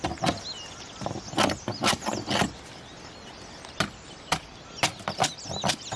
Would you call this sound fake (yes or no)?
no